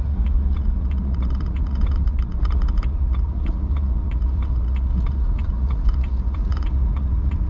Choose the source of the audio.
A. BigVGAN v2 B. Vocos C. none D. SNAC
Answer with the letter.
B